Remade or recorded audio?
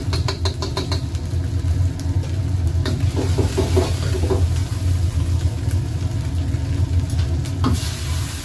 recorded